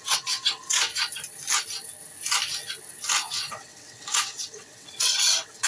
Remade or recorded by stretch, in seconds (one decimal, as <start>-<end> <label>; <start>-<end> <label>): 0.0-0.9 remade; 0.9-3.5 recorded; 3.5-5.7 remade

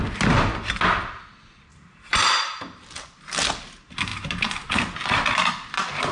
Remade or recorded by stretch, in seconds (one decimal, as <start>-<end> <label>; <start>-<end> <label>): 0.0-1.7 recorded; 1.7-2.3 remade; 2.3-6.1 recorded

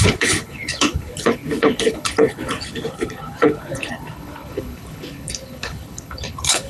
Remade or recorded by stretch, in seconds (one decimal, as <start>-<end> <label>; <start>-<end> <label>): 0.0-6.7 remade

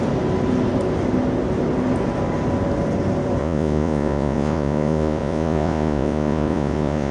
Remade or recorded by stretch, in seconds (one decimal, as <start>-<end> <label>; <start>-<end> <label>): 0.0-3.4 recorded; 3.4-7.1 remade

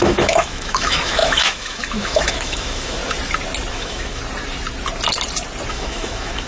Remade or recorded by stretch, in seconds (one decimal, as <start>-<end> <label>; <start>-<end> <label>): 0.0-3.0 remade; 3.0-3.7 recorded; 3.7-4.2 remade; 4.2-5.7 recorded; 5.7-6.5 remade

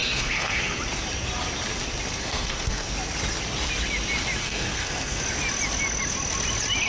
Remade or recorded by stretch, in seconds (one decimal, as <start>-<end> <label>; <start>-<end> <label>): 0.0-0.8 remade; 0.8-2.1 recorded; 2.1-2.9 remade; 2.9-4.4 recorded; 4.4-5.2 remade; 5.2-6.9 recorded

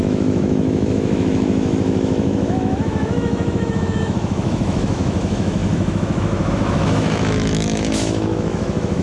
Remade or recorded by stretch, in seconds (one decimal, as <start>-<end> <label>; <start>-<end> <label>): 0.0-9.0 remade

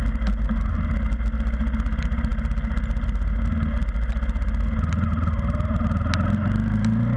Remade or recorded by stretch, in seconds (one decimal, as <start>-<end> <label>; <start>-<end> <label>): 0.0-7.2 recorded